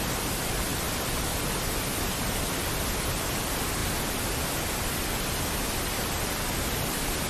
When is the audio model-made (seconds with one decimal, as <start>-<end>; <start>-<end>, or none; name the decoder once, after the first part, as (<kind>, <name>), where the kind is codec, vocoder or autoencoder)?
none

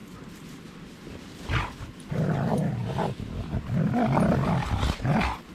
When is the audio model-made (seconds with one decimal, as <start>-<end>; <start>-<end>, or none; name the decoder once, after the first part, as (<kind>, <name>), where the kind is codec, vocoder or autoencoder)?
none

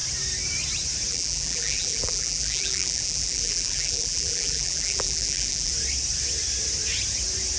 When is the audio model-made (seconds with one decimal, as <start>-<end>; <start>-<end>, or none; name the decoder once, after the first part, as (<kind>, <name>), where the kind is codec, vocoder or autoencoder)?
1.1-5.7 (vocoder, BigVGAN v2)

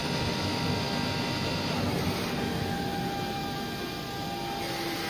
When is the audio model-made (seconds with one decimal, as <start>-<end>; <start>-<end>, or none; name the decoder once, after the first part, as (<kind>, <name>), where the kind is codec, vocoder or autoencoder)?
none

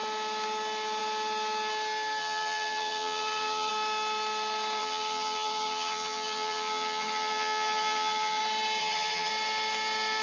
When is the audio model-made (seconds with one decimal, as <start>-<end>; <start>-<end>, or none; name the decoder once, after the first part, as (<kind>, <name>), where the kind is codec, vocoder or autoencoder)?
2.2-3.7 (vocoder, HiFi-GAN); 4.8-8.4; 8.8-9.3

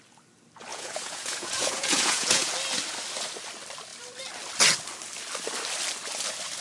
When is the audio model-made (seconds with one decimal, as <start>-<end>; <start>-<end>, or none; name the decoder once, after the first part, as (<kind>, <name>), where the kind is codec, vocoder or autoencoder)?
0.7-2.5 (vocoder, Vocos)

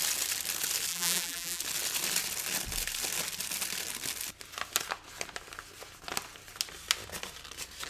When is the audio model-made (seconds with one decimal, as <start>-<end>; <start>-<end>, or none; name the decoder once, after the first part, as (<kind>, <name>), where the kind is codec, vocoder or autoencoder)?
0.9-1.6 (vocoder, BigVGAN v2)

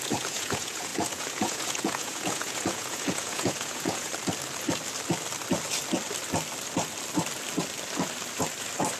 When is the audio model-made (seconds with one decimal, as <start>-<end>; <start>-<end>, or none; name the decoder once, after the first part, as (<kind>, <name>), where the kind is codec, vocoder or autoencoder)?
0.0-4.1 (vocoder, Vocos)